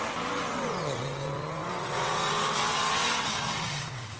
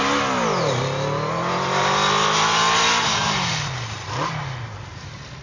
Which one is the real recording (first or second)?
second